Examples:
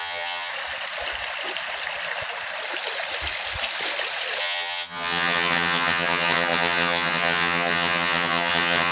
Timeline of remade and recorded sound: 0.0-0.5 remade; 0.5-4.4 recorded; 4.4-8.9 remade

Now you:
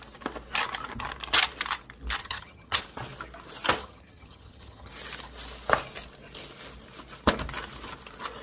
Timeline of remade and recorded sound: 0.0-2.2 recorded; 2.2-2.8 remade; 2.8-3.8 recorded; 3.8-4.9 remade; 4.9-8.4 recorded